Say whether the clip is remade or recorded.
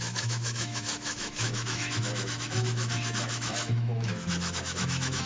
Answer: remade